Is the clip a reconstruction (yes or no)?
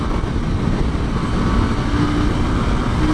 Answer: no